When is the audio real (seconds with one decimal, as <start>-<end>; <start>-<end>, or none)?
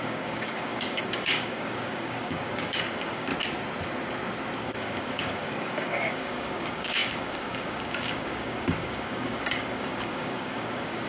3.3-4.6